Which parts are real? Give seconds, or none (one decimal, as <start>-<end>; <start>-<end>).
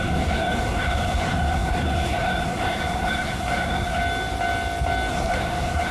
4.0-5.1